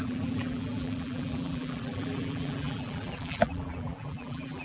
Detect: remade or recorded remade